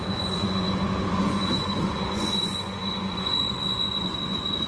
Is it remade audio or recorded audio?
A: remade